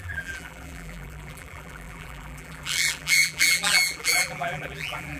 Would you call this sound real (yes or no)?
no